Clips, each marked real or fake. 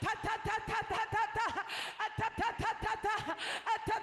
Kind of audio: real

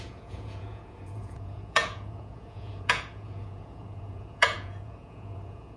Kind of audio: fake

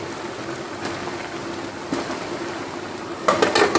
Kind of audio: real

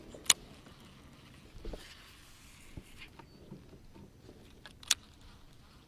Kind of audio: real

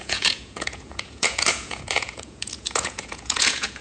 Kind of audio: fake